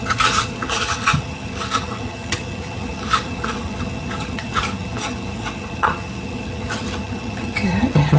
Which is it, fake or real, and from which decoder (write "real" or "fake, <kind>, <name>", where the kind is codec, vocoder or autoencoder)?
fake, vocoder, HiFi-GAN